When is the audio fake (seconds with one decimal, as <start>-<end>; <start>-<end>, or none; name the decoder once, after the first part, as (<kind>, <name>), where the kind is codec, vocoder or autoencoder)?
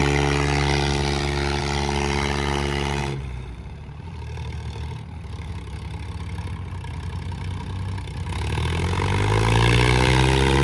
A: 3.0-5.5 (vocoder, BigVGAN v2)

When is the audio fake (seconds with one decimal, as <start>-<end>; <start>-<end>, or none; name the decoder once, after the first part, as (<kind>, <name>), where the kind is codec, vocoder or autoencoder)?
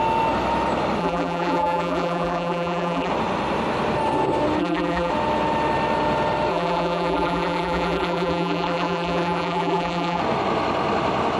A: 1.0-3.1 (vocoder, BigVGAN v2); 4.6-5.1; 6.5-10.2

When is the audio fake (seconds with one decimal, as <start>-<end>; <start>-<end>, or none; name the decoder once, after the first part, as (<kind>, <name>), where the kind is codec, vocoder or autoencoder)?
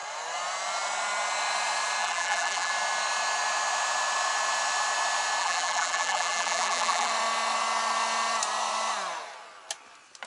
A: 2.0-2.7 (vocoder, BigVGAN v2); 5.4-7.1